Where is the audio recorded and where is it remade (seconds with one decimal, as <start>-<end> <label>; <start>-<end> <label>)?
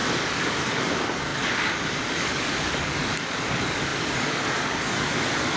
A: 0.0-5.6 remade